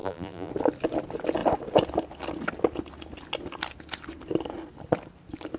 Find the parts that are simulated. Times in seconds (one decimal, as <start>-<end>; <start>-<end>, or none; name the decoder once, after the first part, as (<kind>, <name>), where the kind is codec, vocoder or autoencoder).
0.0-0.5 (vocoder, BigVGAN v2)